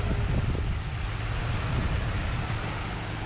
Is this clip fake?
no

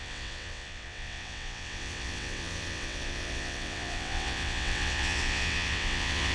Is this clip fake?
yes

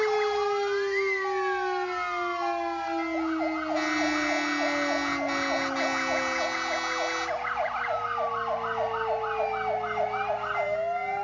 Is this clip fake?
no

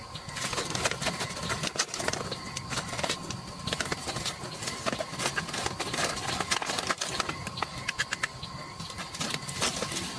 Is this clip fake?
no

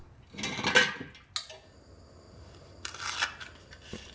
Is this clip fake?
no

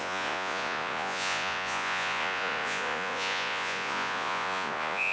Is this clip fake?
yes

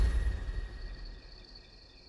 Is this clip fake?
no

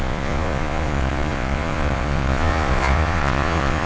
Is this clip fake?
yes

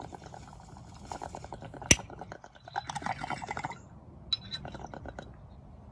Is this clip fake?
no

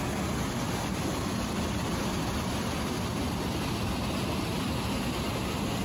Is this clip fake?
no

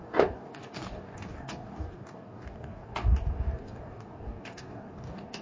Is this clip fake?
yes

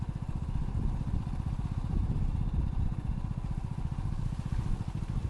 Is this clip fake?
no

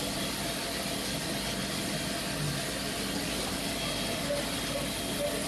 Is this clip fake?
no